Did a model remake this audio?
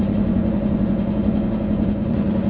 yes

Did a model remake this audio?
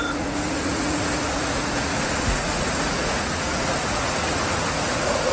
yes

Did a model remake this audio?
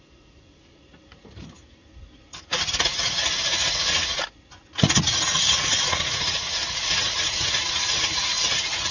yes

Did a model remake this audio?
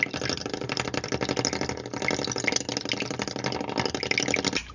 no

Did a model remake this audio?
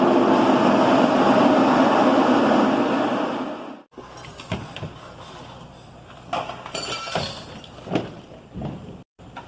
no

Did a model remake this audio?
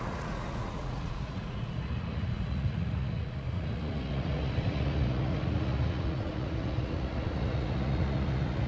yes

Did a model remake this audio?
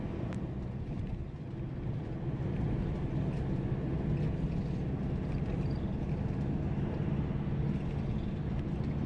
no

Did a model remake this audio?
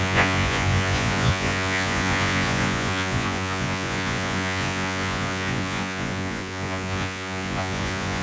yes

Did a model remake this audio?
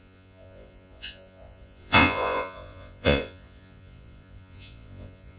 yes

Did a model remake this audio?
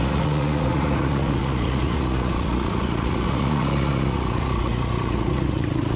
yes